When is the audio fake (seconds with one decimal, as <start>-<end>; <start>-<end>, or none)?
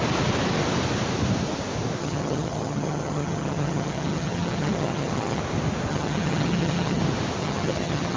2.0-5.4; 5.9-7.0; 7.4-8.2